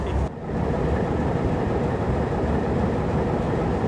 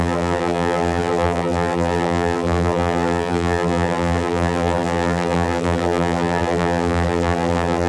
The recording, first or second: first